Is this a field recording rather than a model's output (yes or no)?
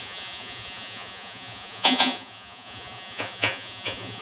no